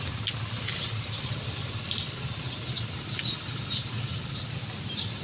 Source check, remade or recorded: recorded